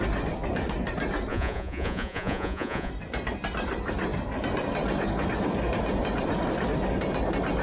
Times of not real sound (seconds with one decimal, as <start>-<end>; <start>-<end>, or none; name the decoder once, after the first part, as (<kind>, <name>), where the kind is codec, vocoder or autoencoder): 1.3-2.9 (vocoder, Vocos)